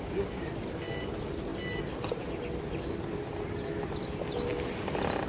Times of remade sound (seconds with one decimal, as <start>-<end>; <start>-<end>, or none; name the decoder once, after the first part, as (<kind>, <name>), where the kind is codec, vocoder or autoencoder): 0.0-1.5 (vocoder, BigVGAN v2); 2.6-5.3